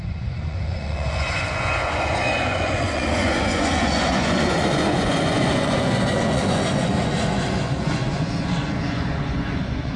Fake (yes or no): yes